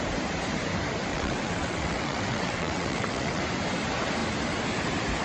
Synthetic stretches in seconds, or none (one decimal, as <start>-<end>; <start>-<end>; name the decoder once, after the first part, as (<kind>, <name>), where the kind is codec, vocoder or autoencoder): 1.1-3.4 (vocoder, WaveNeXt)